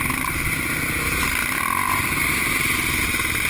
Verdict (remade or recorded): recorded